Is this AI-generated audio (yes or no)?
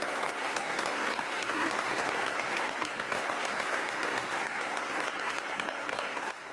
yes